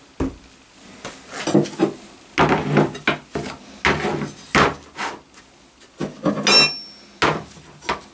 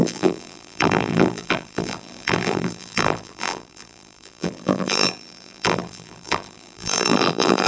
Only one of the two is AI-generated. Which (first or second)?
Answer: second